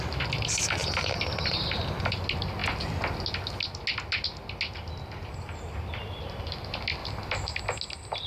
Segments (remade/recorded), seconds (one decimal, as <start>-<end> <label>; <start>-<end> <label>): 0.0-7.0 recorded; 7.0-7.6 remade; 7.6-8.3 recorded